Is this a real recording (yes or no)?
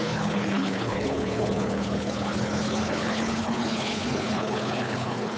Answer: no